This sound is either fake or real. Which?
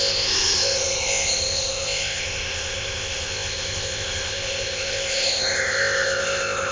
fake